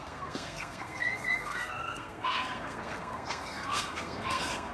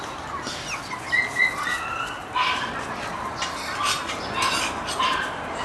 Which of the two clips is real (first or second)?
second